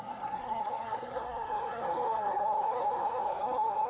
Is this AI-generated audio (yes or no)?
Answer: yes